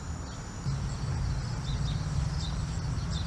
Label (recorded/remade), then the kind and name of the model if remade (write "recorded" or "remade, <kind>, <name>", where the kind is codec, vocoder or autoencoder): recorded